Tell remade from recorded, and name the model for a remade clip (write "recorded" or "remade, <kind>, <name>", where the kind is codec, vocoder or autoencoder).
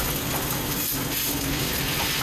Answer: recorded